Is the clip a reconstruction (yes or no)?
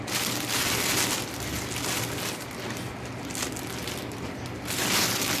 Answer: no